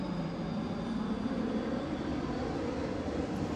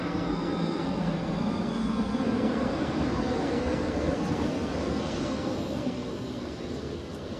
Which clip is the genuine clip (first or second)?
first